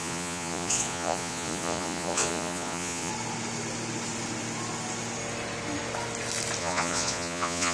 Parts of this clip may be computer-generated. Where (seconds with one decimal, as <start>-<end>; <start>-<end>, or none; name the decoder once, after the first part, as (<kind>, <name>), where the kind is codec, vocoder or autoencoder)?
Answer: 0.0-3.1 (vocoder, Vocos); 6.6-7.7